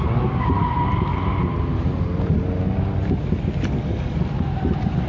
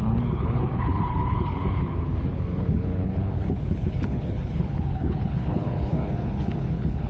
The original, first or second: first